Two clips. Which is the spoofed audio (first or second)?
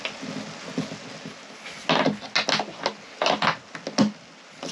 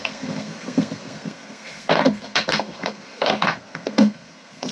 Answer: second